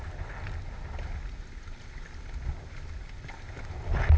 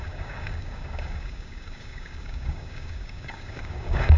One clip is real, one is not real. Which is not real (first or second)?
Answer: second